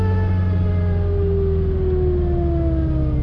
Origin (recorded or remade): recorded